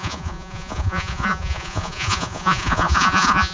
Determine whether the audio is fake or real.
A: fake